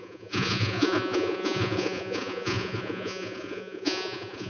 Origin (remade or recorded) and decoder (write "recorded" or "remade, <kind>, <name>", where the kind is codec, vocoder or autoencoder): remade, vocoder, Vocos